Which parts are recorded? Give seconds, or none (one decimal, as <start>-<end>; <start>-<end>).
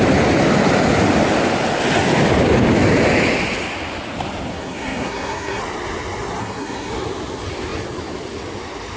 0.0-4.5; 5.6-6.4; 6.9-9.0